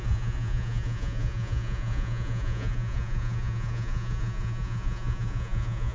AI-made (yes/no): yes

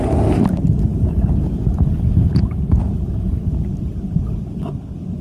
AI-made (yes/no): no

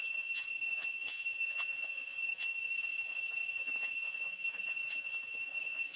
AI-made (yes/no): yes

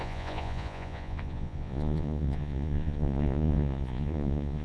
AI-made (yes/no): yes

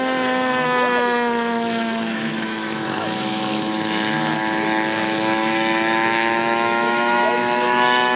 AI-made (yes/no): yes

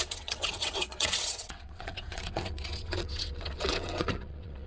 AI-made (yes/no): yes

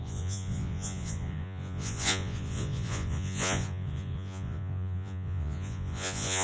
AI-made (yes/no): yes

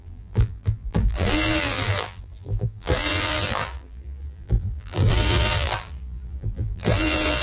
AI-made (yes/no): yes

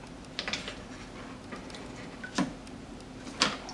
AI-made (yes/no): no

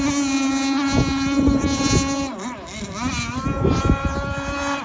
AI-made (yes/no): no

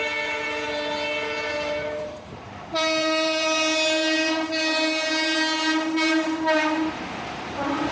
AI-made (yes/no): yes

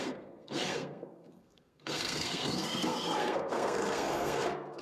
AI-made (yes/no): yes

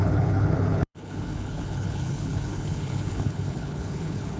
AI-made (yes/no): yes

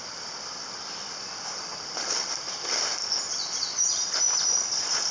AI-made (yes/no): no